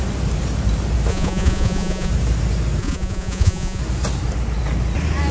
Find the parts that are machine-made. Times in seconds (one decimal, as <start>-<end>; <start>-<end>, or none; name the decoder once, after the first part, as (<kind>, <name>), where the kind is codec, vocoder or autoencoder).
1.1-2.1 (vocoder, Vocos); 2.8-3.8